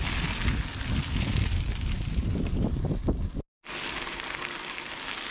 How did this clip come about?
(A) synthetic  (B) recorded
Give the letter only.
B